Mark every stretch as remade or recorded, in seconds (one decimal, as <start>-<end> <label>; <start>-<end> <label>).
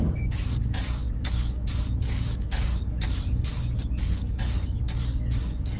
0.0-5.8 remade